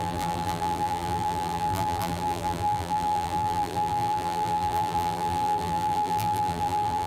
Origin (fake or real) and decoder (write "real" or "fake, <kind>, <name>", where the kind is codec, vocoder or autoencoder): fake, vocoder, BigVGAN v2